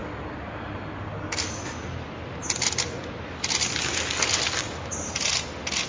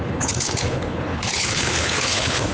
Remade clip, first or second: second